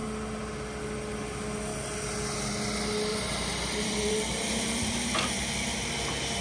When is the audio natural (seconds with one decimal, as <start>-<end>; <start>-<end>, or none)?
0.0-3.1; 5.9-6.4